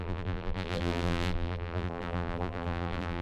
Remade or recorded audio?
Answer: remade